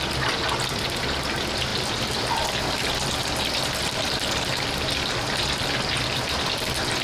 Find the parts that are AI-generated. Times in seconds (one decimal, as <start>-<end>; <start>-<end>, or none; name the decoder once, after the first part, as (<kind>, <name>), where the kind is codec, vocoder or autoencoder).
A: none